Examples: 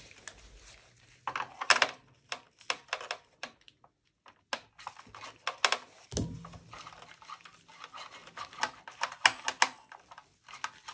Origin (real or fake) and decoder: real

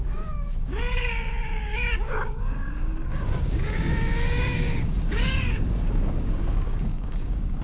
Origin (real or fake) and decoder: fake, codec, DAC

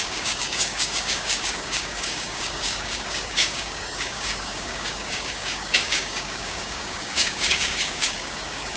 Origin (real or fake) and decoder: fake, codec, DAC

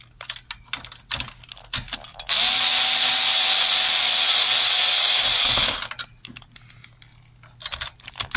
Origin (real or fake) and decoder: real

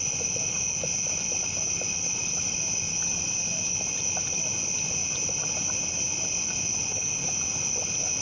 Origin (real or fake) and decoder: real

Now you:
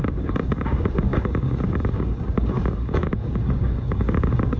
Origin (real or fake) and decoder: fake, codec, DAC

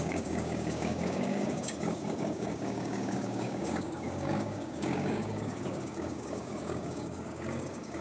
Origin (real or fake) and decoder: fake, codec, DAC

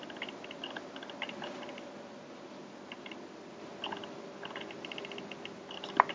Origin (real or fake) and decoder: real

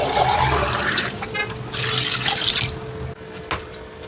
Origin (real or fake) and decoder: real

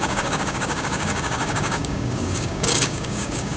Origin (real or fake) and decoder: fake, codec, DAC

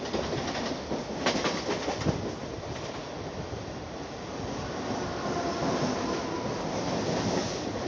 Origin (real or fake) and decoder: real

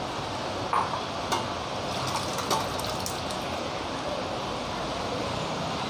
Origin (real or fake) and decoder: real